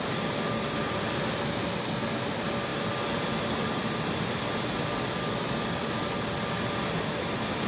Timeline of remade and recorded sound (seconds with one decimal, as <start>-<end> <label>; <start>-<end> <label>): 0.0-7.7 recorded